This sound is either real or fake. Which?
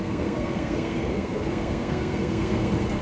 fake